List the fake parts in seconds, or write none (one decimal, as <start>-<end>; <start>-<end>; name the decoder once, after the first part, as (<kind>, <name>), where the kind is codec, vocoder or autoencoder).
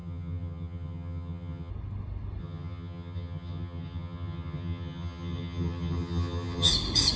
0.0-1.7 (vocoder, HiFi-GAN); 2.4-6.7